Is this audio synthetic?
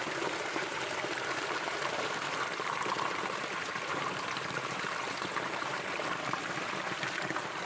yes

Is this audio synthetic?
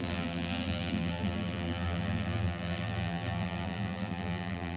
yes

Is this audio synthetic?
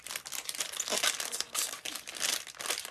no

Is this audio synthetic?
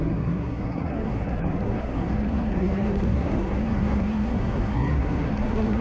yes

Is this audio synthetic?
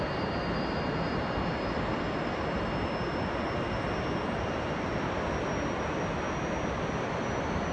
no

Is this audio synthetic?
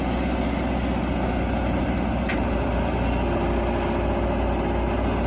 no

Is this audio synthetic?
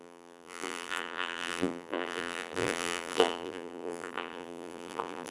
yes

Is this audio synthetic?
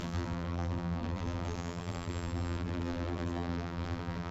yes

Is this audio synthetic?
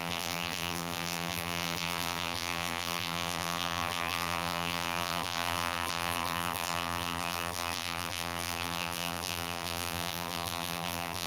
yes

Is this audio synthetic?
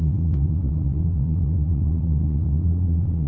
yes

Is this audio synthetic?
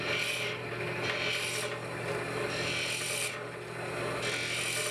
no